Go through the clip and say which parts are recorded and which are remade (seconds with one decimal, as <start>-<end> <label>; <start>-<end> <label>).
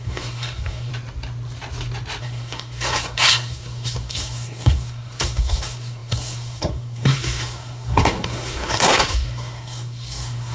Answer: 0.0-0.9 remade; 0.9-2.2 recorded; 2.2-10.5 remade